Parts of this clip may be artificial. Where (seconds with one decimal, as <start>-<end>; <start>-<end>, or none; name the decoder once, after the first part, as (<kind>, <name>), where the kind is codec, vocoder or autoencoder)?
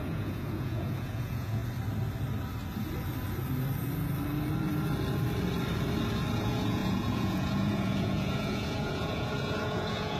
0.0-1.6 (vocoder, Vocos); 6.3-10.2